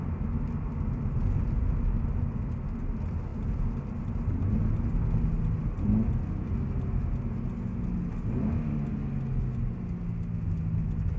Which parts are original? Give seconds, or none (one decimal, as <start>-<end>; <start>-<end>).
0.0-11.2